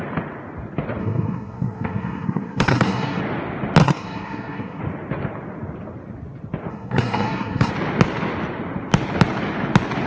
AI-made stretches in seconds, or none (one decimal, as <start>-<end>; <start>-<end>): 1.0-3.2; 3.8-4.8; 6.7-7.7